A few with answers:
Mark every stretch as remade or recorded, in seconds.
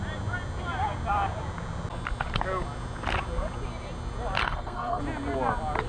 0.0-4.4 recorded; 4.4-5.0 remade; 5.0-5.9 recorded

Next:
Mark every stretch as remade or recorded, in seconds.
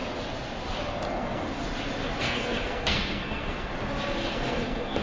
0.0-1.1 recorded; 1.1-1.6 remade; 1.6-2.2 recorded; 2.2-3.7 remade; 3.7-4.3 recorded; 4.3-5.0 remade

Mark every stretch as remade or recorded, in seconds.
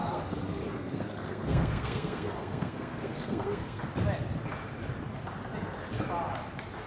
0.0-3.8 remade; 3.8-6.9 recorded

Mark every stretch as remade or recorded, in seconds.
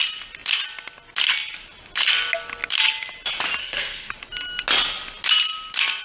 0.0-3.6 recorded; 3.6-4.1 remade; 4.1-6.0 recorded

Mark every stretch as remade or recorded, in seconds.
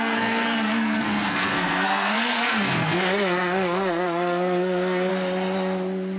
0.0-5.1 remade; 5.1-6.2 recorded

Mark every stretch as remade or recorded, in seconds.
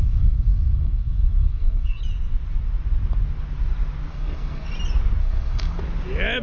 0.0-2.0 remade; 2.0-4.1 recorded; 4.1-4.7 remade; 4.7-5.2 recorded; 5.2-5.8 remade; 5.8-6.4 recorded